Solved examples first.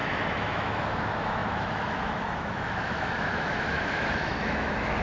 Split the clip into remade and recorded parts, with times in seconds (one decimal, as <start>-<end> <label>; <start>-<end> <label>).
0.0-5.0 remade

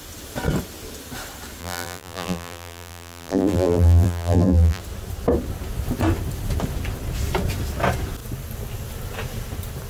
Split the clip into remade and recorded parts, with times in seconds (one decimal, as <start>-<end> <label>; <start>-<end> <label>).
0.0-1.6 recorded; 1.6-4.8 remade; 4.8-9.9 recorded

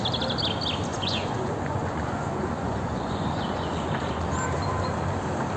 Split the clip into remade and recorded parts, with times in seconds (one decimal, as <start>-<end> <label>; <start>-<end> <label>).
0.0-0.9 recorded; 0.9-4.3 remade; 4.3-5.6 recorded